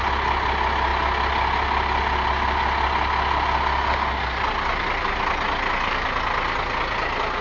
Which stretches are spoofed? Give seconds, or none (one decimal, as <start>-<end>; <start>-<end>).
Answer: none